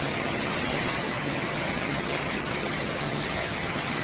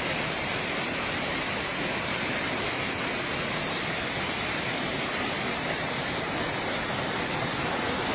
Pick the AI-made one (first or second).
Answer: first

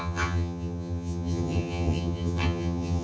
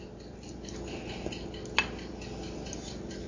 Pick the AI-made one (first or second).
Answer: first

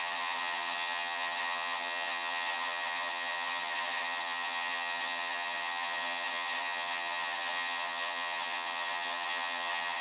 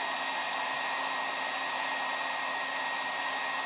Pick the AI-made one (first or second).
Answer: first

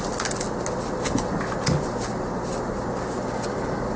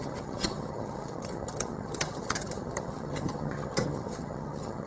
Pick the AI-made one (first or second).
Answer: second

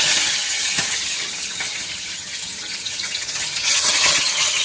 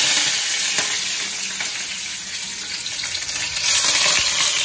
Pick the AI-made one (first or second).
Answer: first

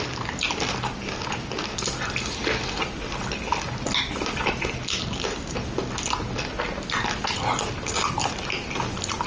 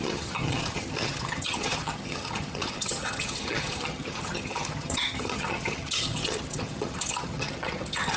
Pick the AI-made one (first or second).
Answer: second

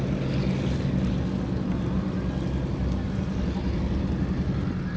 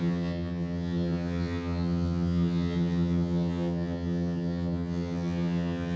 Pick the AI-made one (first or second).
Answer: second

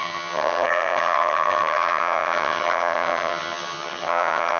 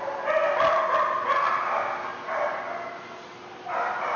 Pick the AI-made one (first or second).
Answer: first